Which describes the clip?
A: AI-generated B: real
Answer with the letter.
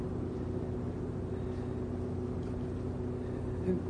B